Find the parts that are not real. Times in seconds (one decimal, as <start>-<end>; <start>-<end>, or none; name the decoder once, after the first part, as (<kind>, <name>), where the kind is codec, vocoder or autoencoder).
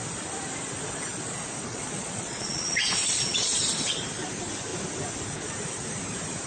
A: 1.7-3.6 (vocoder, Vocos)